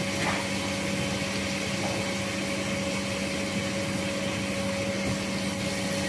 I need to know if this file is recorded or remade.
recorded